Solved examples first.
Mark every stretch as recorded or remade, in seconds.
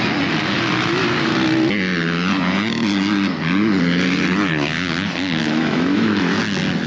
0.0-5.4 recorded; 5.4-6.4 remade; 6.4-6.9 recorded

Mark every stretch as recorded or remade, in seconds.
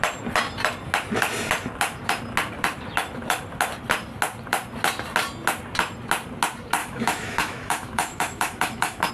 0.0-6.8 recorded; 6.8-9.1 remade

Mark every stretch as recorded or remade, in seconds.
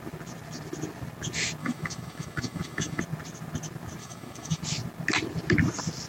0.0-1.6 recorded; 1.6-3.0 remade; 3.0-4.0 recorded; 4.0-4.6 remade; 4.6-6.1 recorded